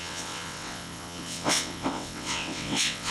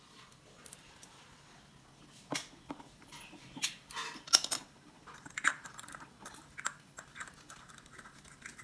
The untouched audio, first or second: second